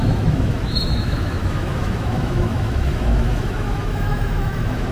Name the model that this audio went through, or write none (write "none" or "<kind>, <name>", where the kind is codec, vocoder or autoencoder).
autoencoder, DAC-VAE